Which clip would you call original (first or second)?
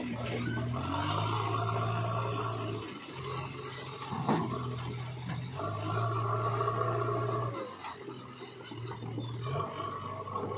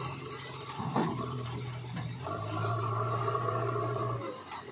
first